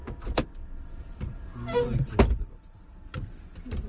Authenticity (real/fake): real